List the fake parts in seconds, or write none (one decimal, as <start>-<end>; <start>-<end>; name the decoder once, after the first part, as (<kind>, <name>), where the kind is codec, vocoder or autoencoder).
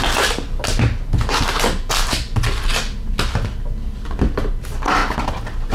none